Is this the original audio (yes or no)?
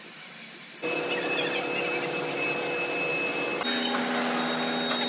yes